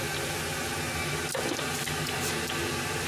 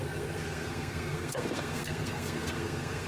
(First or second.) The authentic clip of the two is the first